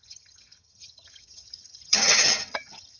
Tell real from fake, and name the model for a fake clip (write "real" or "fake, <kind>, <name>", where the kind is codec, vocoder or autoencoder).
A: fake, vocoder, HiFi-GAN